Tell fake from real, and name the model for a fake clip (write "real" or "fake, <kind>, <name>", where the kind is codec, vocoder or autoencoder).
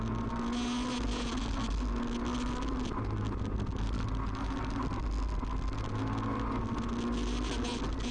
real